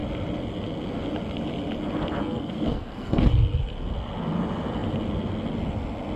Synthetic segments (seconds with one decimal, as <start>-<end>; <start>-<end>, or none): 2.2-3.2